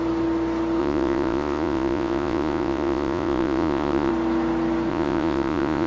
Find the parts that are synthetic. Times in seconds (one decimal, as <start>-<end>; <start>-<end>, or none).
0.8-4.1; 4.9-5.9